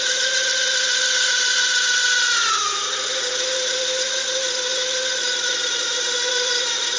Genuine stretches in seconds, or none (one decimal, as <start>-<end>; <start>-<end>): 1.5-2.5